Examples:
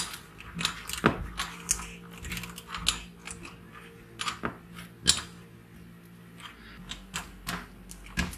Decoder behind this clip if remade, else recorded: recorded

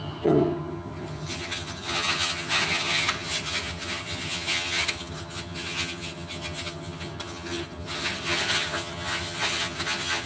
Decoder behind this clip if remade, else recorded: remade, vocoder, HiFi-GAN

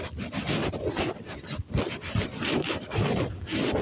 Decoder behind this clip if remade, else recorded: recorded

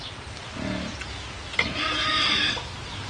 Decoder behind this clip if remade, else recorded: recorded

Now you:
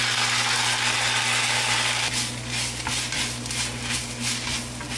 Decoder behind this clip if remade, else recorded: recorded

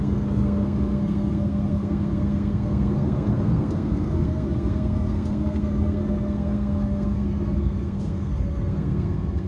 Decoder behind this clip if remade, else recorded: remade, codec, SNAC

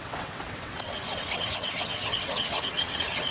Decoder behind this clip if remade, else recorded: remade, vocoder, WaveNeXt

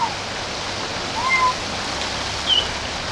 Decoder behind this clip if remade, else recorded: recorded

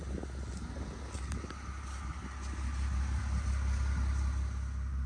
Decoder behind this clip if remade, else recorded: recorded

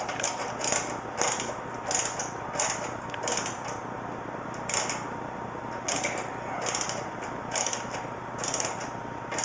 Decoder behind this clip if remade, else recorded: recorded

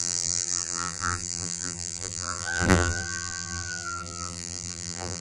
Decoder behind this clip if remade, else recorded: remade, vocoder, BigVGAN v2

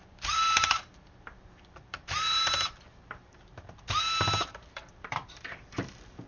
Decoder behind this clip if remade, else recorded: remade, vocoder, BigVGAN v2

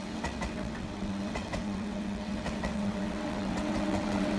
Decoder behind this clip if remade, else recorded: remade, vocoder, WaveNeXt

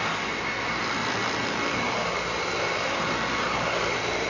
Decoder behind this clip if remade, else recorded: recorded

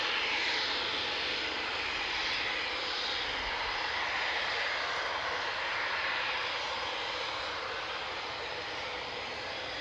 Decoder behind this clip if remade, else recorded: recorded